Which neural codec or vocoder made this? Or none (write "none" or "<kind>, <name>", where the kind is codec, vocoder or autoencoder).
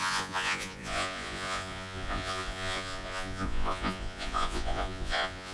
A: vocoder, Vocos